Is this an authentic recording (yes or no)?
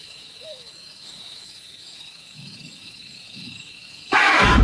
no